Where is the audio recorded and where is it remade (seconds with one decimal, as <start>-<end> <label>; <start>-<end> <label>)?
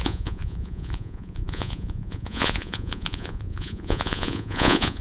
0.0-5.0 remade